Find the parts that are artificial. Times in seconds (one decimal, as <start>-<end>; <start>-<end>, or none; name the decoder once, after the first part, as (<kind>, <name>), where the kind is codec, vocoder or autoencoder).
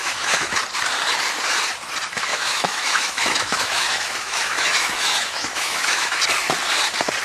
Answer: 0.0-0.6 (autoencoder, DAC-VAE); 2.3-6.2